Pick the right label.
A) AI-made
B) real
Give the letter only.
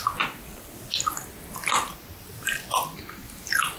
B